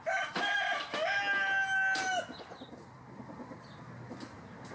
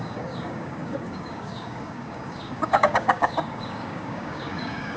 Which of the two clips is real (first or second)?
first